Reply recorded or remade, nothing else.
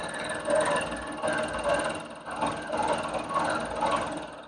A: recorded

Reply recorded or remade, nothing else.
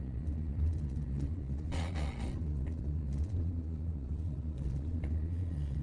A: remade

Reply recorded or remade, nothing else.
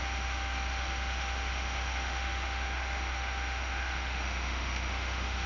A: remade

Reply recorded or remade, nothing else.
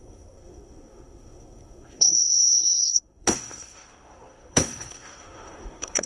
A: remade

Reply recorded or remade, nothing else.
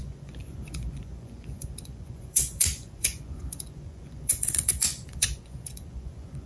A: remade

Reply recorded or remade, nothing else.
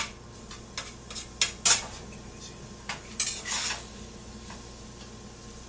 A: recorded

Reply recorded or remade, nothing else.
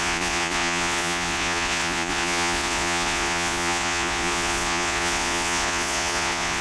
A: remade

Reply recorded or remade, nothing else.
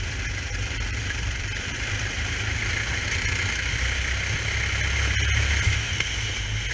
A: remade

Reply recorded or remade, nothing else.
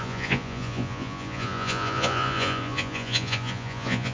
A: remade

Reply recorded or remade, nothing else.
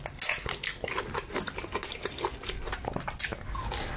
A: recorded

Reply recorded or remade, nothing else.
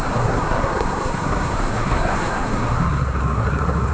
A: remade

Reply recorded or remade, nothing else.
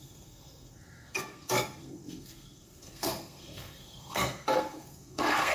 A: remade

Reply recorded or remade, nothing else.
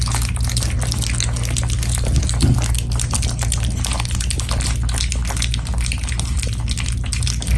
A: recorded